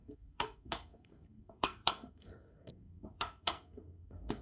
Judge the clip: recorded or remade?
remade